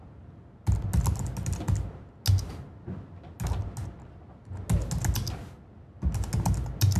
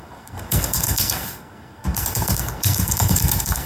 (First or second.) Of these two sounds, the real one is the first